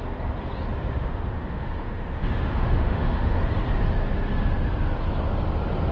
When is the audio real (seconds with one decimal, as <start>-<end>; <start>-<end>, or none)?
0.0-1.0; 3.4-5.9